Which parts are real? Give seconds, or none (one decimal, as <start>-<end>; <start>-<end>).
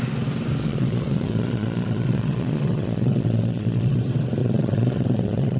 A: 0.0-0.6; 4.0-4.4